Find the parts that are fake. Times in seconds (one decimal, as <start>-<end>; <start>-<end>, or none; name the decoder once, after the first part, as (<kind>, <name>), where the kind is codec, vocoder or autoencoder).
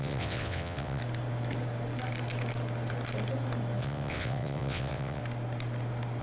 0.0-1.0 (vocoder, WaveNeXt); 3.8-5.2